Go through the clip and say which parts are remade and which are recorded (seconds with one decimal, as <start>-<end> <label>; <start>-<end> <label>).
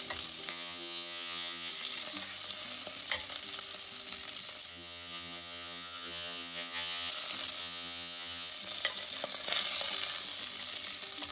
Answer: 0.0-0.5 recorded; 0.5-1.7 remade; 1.7-4.7 recorded; 4.7-7.1 remade; 7.1-7.6 recorded; 7.6-8.5 remade; 8.5-11.3 recorded